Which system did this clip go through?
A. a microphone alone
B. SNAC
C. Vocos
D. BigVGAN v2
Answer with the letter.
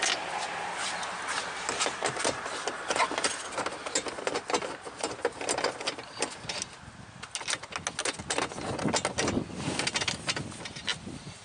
A